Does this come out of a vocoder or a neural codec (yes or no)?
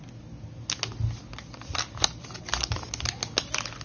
no